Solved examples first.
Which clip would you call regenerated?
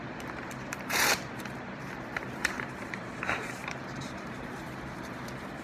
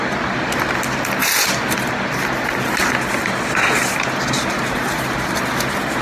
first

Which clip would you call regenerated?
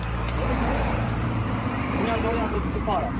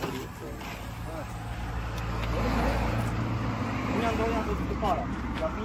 first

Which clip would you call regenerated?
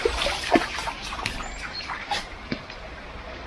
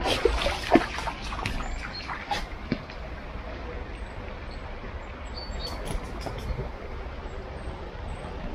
first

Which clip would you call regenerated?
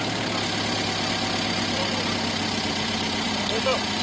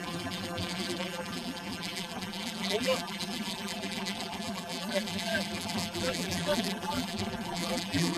second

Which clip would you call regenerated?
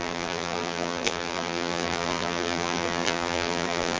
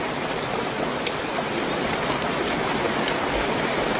first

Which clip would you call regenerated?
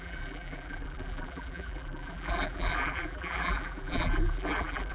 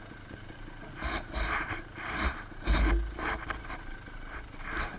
first